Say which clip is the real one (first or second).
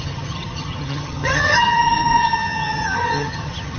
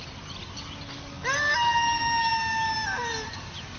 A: second